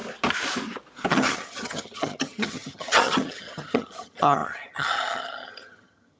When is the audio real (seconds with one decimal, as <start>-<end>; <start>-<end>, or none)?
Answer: 0.0-1.1